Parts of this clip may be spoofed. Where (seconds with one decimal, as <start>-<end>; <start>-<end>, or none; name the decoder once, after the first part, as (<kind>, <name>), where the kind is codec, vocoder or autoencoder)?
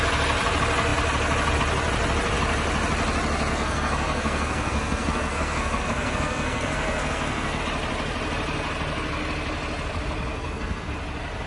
3.5-7.6 (codec, SNAC); 10.3-10.9